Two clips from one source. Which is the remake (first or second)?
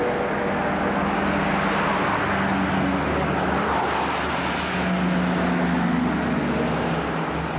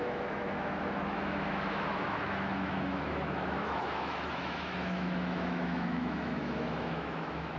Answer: second